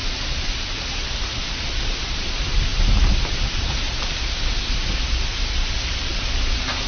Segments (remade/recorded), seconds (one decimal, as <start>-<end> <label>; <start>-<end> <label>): 0.0-6.9 recorded